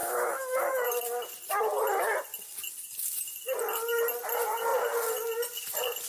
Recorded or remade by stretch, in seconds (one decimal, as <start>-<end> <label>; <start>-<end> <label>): 0.0-0.9 remade; 0.9-6.1 recorded